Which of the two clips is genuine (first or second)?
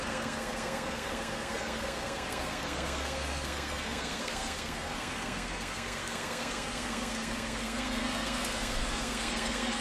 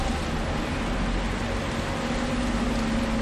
second